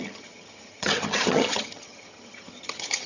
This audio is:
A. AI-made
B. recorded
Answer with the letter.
A